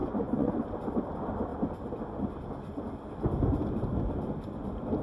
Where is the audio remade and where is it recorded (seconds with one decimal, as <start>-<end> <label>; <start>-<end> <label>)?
0.0-0.7 remade; 0.7-5.0 recorded